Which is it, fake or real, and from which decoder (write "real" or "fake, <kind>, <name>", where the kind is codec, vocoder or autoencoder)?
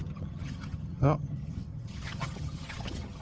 fake, vocoder, HiFi-GAN